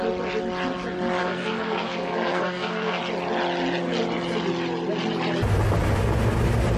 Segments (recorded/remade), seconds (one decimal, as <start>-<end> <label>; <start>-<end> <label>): 0.0-1.2 recorded; 1.2-3.0 remade; 3.0-6.8 recorded